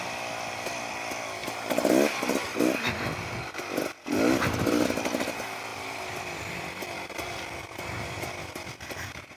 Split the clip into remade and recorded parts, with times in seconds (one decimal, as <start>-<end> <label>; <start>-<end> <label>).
0.0-5.7 recorded; 5.7-6.6 remade; 6.6-9.4 recorded